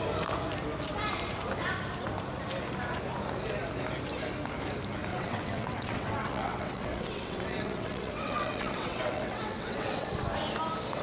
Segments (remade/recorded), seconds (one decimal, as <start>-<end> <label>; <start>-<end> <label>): 0.0-5.1 recorded; 5.1-10.1 remade; 10.1-11.0 recorded